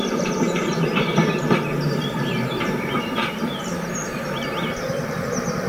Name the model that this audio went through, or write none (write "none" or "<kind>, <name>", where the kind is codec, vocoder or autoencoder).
vocoder, BigVGAN v2